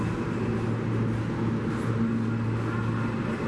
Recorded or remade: recorded